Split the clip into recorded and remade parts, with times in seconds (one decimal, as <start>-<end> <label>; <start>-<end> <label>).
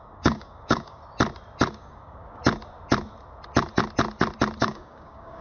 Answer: 0.0-1.0 remade; 1.0-1.7 recorded; 1.7-2.4 remade; 2.4-4.6 recorded; 4.6-5.4 remade